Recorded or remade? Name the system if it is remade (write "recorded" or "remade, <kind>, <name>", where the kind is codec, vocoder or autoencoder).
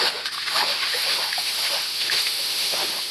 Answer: remade, autoencoder, DAC-VAE